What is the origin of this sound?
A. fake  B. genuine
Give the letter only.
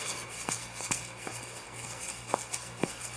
A